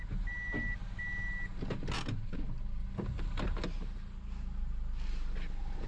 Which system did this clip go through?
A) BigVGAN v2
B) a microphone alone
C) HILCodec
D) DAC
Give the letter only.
B